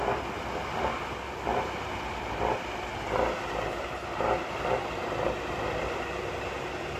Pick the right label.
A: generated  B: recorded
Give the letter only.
B